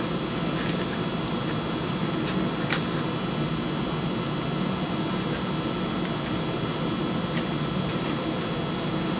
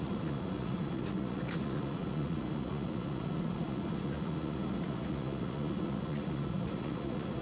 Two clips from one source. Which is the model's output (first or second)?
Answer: second